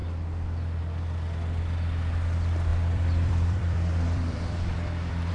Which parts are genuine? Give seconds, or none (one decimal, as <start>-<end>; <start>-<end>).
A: 0.0-2.7